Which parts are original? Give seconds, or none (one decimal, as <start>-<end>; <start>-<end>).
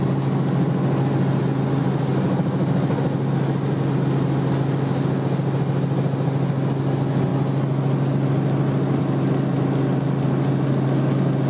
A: 0.0-11.5